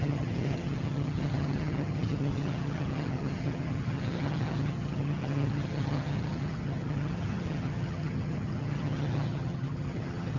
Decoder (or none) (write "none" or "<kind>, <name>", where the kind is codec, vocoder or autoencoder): vocoder, HiFi-GAN